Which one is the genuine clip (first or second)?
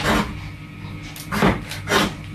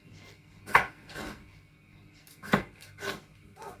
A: first